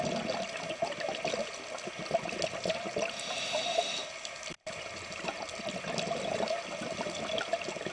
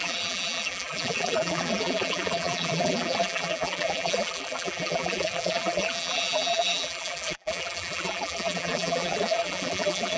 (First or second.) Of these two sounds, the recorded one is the first